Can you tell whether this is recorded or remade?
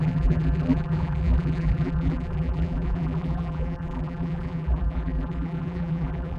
remade